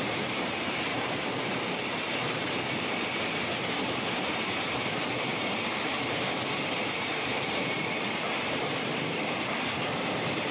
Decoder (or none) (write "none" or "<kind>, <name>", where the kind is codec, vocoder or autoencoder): vocoder, BigVGAN v2